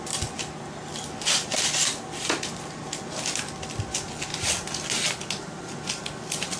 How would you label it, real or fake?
real